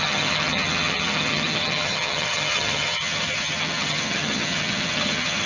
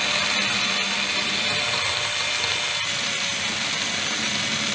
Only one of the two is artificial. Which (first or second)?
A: first